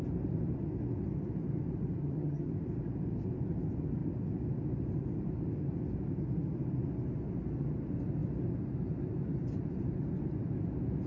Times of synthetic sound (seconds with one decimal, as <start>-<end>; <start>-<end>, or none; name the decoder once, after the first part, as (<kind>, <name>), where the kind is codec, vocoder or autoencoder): 2.0-2.5 (vocoder, HiFi-GAN)

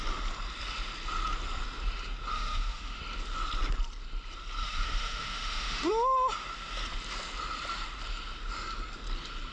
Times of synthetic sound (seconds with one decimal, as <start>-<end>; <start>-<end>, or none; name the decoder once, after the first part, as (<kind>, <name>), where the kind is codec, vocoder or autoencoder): 2.3-3.0 (autoencoder, DAC-VAE); 4.6-5.9

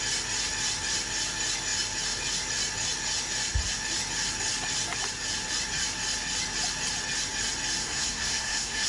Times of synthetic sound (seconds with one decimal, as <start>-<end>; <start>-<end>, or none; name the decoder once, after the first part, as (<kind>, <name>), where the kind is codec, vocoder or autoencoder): 7.8-8.9 (codec, SNAC)

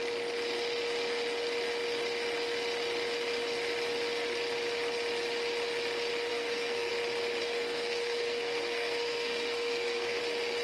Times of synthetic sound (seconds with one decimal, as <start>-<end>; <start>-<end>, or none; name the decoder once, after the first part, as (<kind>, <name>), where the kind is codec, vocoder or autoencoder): 6.3-6.9 (codec, SNAC); 7.4-10.2

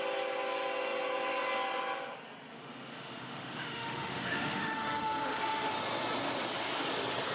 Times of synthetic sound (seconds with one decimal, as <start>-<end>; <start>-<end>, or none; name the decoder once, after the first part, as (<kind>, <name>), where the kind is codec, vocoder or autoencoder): 2.5-5.7 (autoencoder, DAC-VAE)

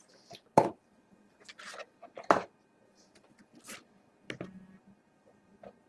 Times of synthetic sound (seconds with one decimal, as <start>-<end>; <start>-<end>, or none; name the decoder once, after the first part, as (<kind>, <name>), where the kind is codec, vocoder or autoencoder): 0.0-0.8 (vocoder, BigVGAN v2); 1.8-5.9

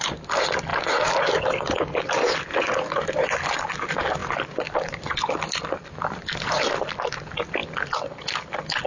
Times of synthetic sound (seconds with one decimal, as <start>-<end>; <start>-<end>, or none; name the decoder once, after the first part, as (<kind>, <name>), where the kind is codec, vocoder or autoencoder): none